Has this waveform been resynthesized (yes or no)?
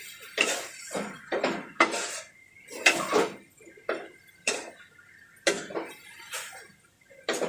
yes